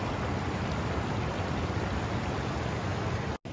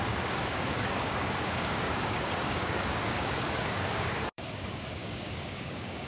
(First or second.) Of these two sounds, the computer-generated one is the second